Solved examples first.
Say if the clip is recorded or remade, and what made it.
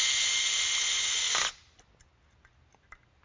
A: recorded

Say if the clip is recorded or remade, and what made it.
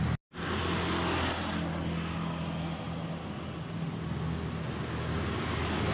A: recorded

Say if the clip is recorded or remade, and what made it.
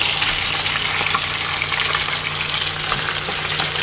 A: recorded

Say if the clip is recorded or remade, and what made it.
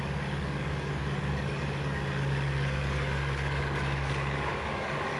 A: remade, codec, DAC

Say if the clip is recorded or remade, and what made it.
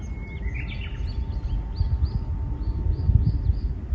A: recorded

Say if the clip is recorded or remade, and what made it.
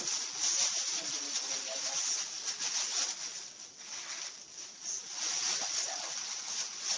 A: recorded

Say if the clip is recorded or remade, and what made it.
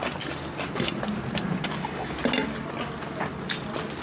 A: recorded